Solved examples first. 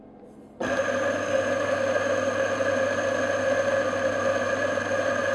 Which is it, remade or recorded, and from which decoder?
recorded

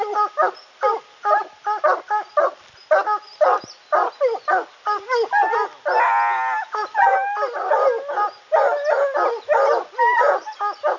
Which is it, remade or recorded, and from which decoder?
recorded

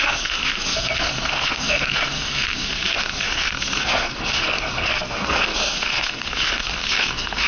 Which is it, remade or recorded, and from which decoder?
remade, codec, SNAC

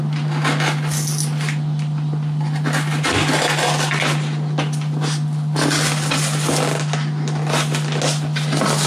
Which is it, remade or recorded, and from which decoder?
recorded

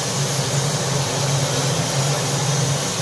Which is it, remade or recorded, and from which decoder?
recorded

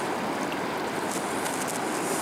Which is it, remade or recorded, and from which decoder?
recorded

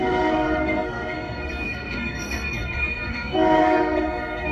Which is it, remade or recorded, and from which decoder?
remade, codec, SNAC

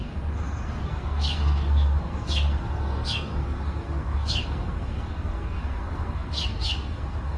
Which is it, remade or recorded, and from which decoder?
remade, codec, SNAC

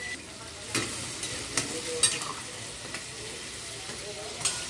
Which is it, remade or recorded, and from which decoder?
recorded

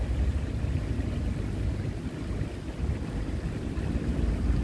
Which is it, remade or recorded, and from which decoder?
recorded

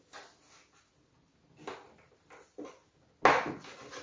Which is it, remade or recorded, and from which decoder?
recorded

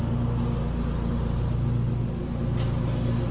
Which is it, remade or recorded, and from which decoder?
recorded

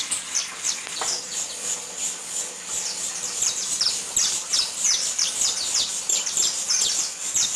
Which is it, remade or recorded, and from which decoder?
recorded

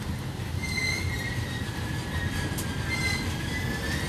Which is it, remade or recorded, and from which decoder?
recorded